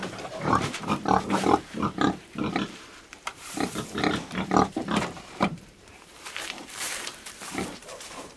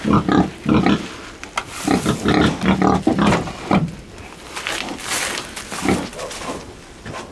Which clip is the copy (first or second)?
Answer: first